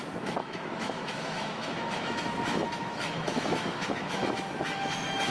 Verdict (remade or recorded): remade